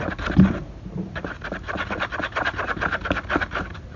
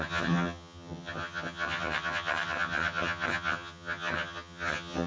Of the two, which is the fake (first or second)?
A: second